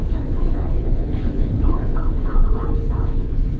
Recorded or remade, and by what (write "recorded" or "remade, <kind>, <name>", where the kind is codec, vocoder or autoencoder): remade, codec, HILCodec